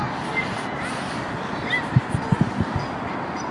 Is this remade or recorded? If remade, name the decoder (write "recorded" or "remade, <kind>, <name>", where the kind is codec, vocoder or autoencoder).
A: recorded